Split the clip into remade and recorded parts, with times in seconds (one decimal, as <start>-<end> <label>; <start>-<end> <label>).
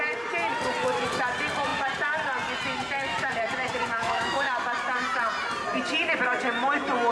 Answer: 0.0-4.0 recorded; 4.0-4.5 remade; 4.5-7.1 recorded